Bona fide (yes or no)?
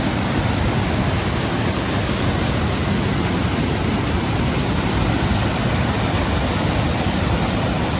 yes